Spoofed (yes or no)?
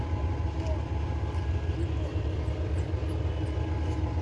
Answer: no